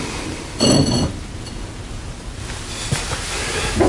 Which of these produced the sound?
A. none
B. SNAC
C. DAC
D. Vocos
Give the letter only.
A